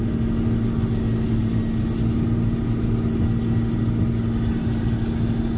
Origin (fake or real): real